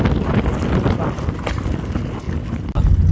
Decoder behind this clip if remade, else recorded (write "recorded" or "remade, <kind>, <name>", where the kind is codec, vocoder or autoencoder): recorded